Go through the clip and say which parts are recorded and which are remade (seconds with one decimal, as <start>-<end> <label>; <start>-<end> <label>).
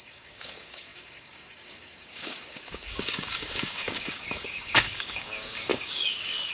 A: 0.0-6.5 remade